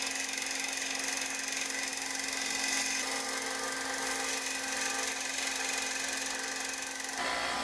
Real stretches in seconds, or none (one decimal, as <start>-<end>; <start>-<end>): 0.0-7.6